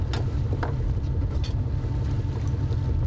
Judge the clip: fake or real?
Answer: real